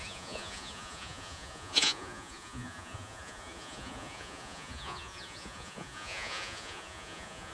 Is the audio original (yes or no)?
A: no